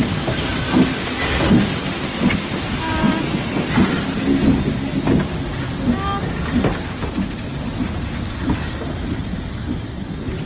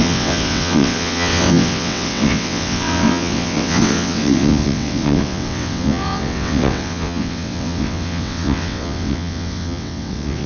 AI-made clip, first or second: second